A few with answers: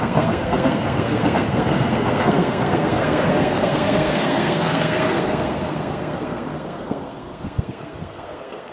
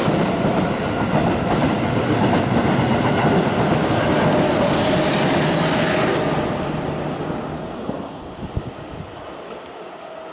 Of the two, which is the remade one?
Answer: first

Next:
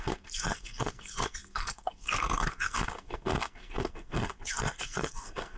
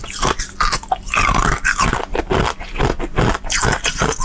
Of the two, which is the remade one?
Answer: first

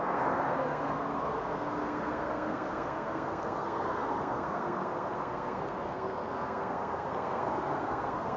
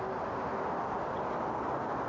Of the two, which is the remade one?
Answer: first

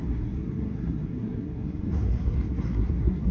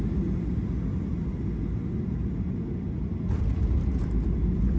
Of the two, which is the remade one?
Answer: first